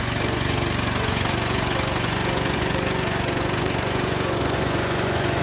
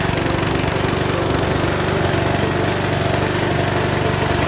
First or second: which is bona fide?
second